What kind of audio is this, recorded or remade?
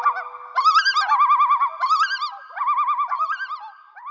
recorded